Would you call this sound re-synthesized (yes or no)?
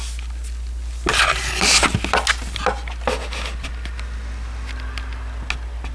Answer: no